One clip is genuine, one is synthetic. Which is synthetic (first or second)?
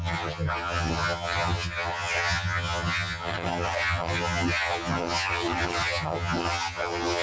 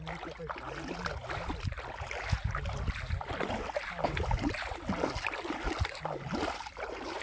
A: first